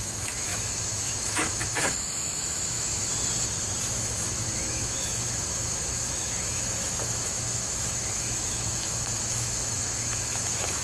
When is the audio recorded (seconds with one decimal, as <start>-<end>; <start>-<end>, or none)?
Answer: 3.1-3.8